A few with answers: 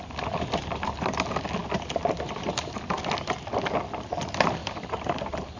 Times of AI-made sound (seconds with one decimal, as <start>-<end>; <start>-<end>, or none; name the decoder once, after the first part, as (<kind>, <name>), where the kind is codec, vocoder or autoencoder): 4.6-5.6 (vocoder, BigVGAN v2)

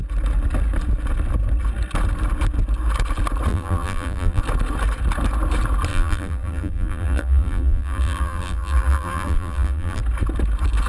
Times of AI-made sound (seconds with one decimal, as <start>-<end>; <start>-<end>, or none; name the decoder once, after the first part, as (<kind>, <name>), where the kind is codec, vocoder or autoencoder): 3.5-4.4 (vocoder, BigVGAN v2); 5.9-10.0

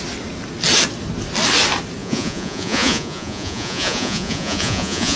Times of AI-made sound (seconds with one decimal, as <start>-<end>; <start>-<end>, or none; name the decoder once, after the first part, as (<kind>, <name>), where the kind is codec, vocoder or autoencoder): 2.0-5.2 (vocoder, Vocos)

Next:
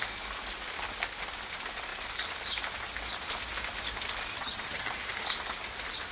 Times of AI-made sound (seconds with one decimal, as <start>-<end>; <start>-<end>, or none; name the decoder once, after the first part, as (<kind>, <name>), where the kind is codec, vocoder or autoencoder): 4.3-4.9 (vocoder, HiFi-GAN)